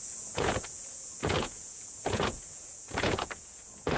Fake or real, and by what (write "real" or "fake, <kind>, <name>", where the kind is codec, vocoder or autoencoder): fake, vocoder, Vocos